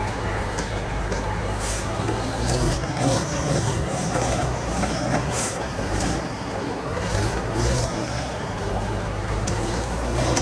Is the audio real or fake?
fake